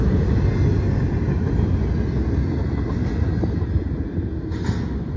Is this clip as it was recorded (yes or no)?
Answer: yes